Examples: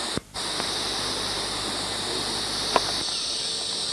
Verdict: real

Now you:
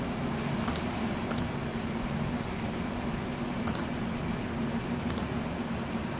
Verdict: real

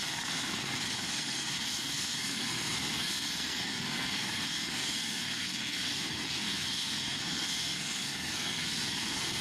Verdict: fake